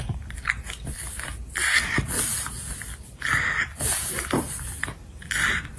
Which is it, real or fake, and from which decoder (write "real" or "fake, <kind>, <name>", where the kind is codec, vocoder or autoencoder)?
real